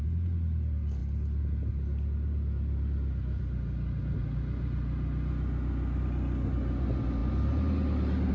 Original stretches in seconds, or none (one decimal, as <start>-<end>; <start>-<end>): 0.0-8.3